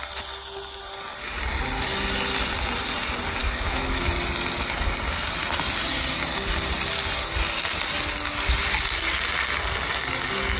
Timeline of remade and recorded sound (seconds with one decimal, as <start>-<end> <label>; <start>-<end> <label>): 0.0-3.4 recorded; 3.4-4.1 remade; 4.1-10.6 recorded